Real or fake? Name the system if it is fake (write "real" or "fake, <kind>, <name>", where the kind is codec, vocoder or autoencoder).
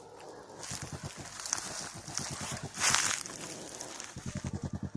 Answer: real